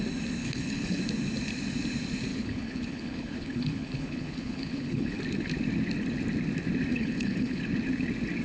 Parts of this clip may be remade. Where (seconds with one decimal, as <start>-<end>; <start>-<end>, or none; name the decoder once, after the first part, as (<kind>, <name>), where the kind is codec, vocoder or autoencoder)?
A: 0.4-1.0 (codec, HILCodec); 2.3-5.2; 6.9-7.6